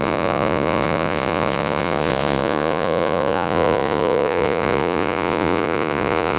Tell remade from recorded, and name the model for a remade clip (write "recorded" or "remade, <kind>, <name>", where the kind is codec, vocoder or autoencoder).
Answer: remade, vocoder, Vocos